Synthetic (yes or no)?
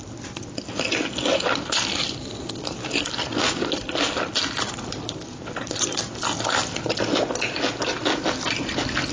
no